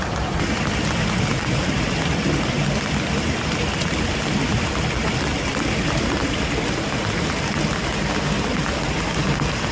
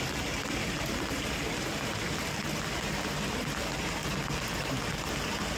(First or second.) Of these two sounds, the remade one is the first